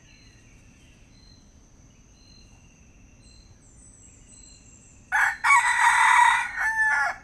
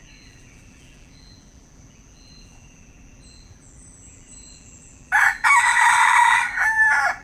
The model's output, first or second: second